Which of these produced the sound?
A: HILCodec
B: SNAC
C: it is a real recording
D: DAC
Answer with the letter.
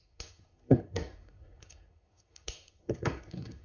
B